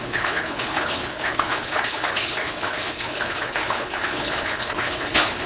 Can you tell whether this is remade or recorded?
remade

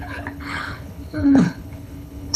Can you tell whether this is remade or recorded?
remade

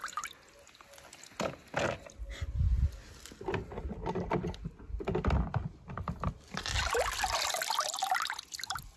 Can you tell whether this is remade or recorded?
recorded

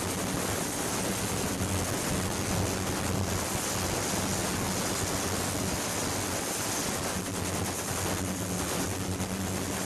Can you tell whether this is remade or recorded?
recorded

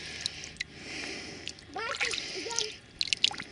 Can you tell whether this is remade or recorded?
recorded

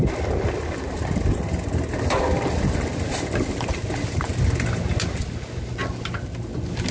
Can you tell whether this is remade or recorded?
recorded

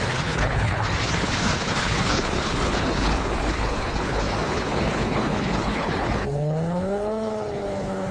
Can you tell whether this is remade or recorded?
remade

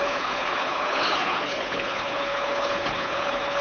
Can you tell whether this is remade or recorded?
remade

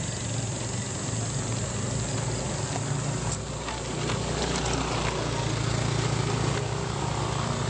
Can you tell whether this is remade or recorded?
recorded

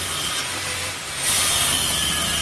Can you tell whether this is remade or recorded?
recorded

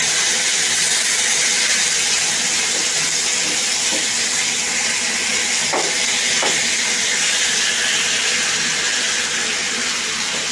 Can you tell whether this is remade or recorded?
recorded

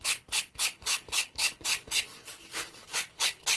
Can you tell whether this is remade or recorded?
remade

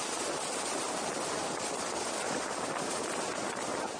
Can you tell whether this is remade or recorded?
recorded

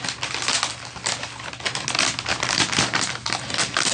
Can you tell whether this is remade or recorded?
recorded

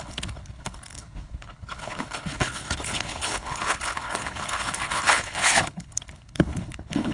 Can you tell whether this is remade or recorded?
remade